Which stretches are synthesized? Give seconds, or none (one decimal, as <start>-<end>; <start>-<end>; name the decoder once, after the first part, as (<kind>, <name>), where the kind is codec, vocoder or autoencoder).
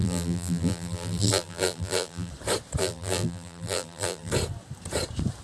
0.0-2.3 (vocoder, BigVGAN v2); 2.8-4.3